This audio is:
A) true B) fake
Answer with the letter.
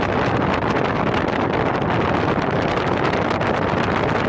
A